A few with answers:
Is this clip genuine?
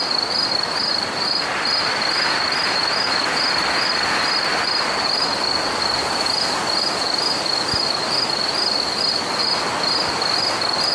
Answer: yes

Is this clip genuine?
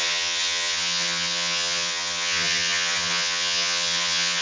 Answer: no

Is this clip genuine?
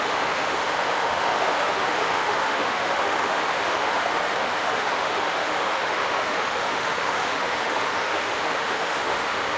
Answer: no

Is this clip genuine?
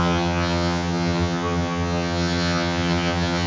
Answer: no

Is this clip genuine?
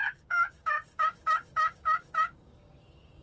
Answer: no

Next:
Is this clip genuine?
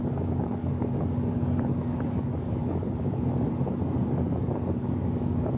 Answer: no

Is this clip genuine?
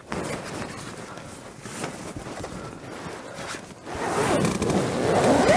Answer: yes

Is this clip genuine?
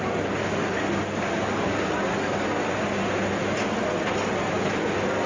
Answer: yes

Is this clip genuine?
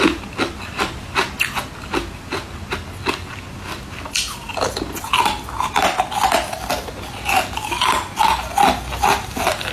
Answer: yes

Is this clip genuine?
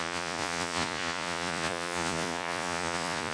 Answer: no